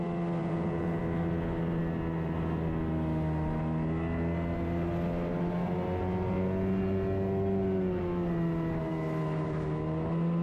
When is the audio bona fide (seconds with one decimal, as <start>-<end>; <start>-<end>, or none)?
0.0-0.4; 1.0-10.4